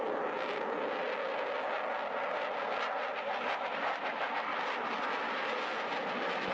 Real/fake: real